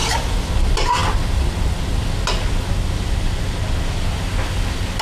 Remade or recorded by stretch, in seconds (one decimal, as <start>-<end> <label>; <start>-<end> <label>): 0.0-0.5 remade; 0.5-5.0 recorded